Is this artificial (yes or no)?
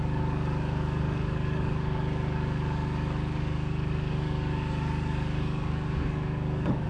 yes